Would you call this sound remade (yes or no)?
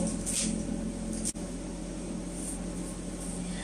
no